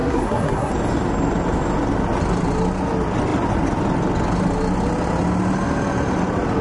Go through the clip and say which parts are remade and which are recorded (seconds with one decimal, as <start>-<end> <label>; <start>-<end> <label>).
0.0-0.7 remade; 0.7-6.6 recorded